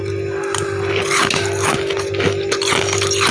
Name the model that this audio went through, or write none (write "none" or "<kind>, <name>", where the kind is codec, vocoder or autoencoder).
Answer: none